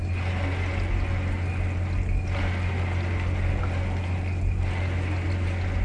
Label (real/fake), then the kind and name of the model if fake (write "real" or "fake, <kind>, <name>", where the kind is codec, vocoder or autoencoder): real